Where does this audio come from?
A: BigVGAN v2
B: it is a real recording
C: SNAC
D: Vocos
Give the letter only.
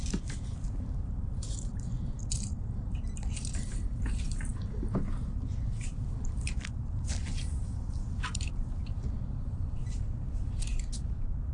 A